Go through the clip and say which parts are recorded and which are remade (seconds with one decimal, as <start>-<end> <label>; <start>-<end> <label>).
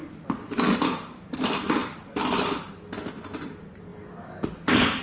0.0-0.5 remade; 0.5-1.8 recorded; 1.8-2.7 remade; 2.7-3.9 recorded; 3.9-4.6 remade; 4.6-5.0 recorded